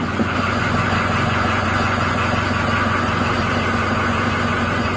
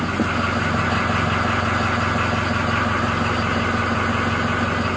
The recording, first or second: second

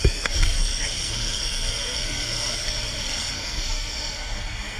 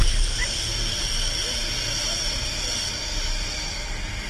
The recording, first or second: second